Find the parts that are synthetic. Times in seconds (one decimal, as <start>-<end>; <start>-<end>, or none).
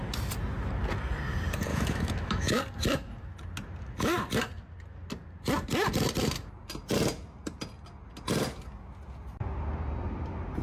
1.7-2.6